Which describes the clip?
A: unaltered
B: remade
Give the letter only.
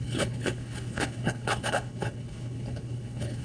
B